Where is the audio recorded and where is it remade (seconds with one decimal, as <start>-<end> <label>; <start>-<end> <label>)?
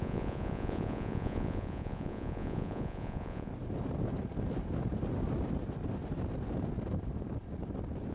0.0-3.5 remade; 3.5-8.1 recorded